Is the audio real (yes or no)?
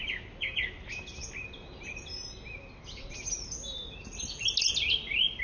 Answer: yes